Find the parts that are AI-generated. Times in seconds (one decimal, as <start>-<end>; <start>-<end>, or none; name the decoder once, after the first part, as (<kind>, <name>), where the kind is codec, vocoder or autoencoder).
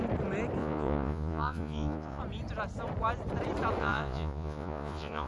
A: 0.6-2.2 (vocoder, Vocos); 3.8-5.3